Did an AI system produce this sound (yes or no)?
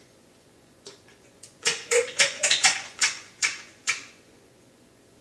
yes